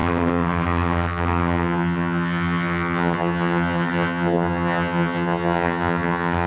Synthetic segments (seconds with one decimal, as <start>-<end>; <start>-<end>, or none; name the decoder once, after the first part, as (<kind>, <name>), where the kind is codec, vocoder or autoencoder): 0.0-6.5 (vocoder, HiFi-GAN)